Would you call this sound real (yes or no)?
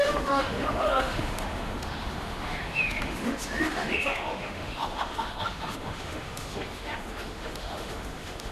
no